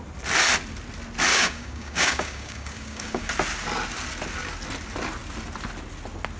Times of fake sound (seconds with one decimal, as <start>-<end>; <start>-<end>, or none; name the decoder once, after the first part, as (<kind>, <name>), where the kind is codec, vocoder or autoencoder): 1.3-3.3 (codec, DAC)